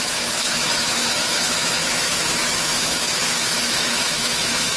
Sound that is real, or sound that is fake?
fake